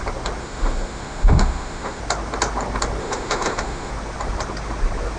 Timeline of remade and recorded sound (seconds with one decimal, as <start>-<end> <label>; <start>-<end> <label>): 0.0-0.4 recorded; 0.4-2.0 remade; 2.0-3.0 recorded; 3.0-3.9 remade; 3.9-5.2 recorded